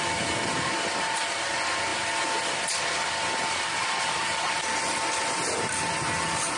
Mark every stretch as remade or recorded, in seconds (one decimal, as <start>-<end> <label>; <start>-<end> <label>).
0.0-6.6 recorded